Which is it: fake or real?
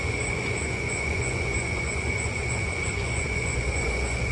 fake